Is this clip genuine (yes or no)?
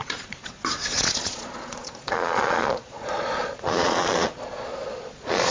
no